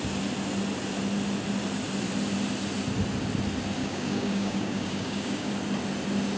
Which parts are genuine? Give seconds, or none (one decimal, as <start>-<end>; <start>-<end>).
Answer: 0.0-3.8; 5.5-6.4